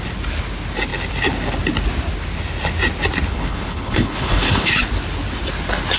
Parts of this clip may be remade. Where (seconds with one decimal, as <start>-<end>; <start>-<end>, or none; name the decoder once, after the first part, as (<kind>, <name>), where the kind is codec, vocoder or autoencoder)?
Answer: 3.3-4.7 (codec, HILCodec)